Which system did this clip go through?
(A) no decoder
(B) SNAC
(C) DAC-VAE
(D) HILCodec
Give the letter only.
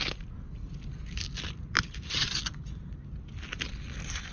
A